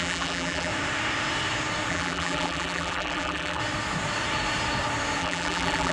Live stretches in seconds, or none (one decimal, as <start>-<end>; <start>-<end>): 0.7-1.9; 3.6-5.2